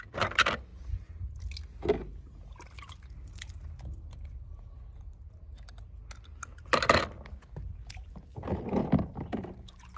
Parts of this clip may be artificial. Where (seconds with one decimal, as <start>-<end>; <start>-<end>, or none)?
none